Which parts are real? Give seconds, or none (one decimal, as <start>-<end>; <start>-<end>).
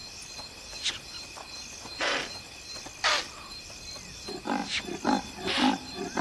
0.0-6.2